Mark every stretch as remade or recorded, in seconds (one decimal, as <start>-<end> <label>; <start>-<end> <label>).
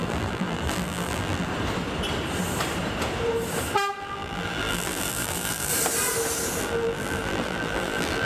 0.0-1.5 remade; 1.5-4.0 recorded; 4.0-5.7 remade; 5.7-6.6 recorded; 6.6-8.3 remade